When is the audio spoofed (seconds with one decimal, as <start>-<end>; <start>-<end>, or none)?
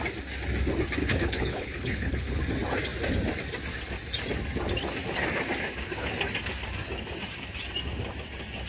1.0-2.4